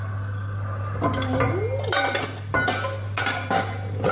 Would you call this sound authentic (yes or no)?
yes